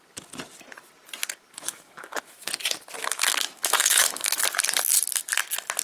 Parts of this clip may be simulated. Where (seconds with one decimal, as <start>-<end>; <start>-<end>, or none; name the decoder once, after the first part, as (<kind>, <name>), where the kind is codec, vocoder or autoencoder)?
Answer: 1.7-2.5 (autoencoder, DAC-VAE); 3.0-4.4